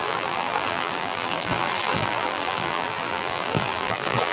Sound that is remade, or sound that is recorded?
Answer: remade